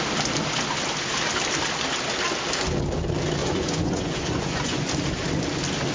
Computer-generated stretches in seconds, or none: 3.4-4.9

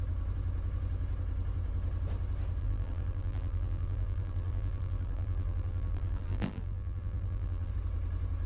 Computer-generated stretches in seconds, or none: 2.6-7.7